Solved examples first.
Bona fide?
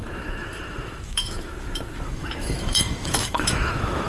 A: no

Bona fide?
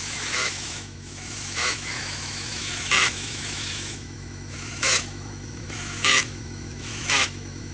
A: no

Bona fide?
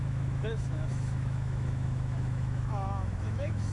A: no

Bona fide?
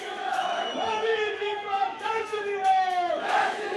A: no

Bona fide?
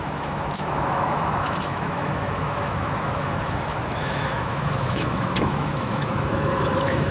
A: no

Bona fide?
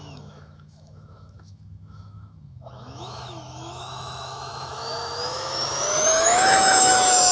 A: no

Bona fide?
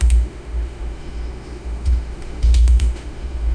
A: no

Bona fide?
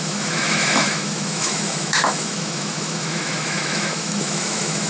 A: no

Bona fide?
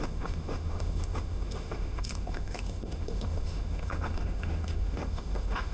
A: no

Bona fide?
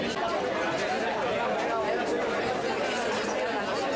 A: yes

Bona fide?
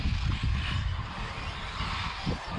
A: yes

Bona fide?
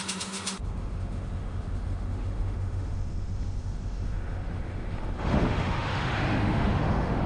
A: no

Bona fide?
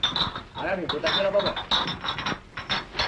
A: yes